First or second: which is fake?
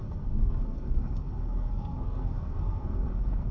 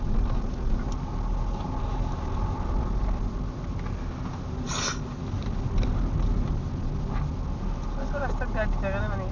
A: first